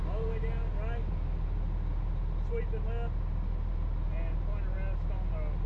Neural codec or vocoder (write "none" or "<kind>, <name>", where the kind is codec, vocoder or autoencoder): none